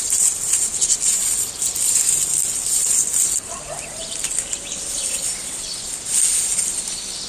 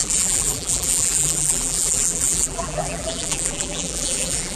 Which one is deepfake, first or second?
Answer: second